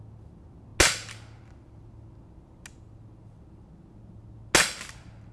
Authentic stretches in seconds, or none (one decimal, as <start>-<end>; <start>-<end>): 0.0-5.3